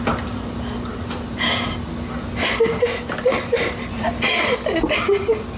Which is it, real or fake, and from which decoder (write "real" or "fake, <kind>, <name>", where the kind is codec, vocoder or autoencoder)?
real